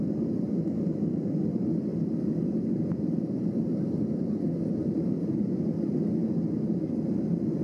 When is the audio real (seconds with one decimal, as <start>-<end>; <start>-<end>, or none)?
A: 0.0-1.9; 6.1-7.6